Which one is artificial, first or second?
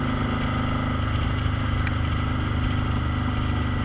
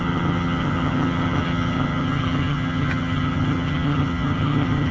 second